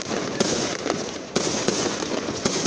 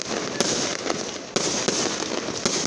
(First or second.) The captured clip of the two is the second